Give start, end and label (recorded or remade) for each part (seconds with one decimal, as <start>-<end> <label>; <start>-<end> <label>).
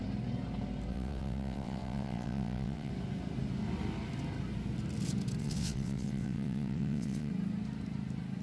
0.0-0.9 recorded; 0.9-2.9 remade; 2.9-5.4 recorded; 5.4-7.3 remade; 7.3-8.4 recorded